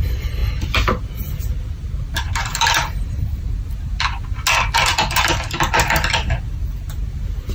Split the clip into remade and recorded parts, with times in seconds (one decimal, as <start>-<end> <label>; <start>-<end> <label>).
0.0-7.5 recorded